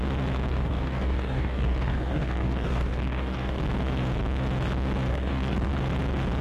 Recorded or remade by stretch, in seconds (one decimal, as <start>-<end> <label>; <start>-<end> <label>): 0.0-0.5 recorded; 0.5-3.6 remade; 3.6-5.1 recorded; 5.1-5.7 remade; 5.7-6.4 recorded